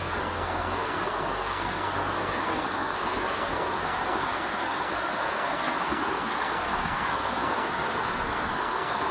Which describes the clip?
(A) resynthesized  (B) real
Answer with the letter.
A